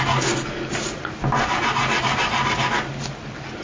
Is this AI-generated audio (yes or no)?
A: no